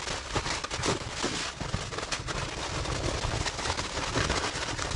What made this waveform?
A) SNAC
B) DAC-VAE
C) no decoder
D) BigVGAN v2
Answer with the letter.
C